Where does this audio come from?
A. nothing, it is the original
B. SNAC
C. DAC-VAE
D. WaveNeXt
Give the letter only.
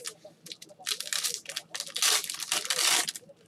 A